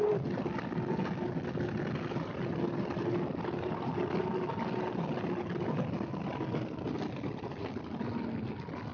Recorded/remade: recorded